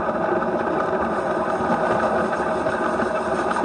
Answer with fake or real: real